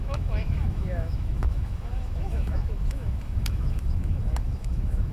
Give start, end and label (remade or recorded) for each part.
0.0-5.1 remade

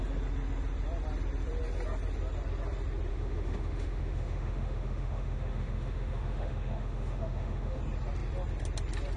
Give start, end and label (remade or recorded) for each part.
0.0-3.1 recorded; 3.1-7.8 remade; 7.8-9.2 recorded

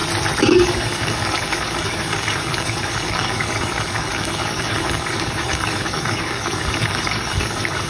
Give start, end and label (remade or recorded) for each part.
0.0-0.5 recorded; 0.5-7.9 remade